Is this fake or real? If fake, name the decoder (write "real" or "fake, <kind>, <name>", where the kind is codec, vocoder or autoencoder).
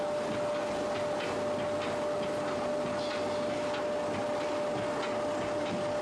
real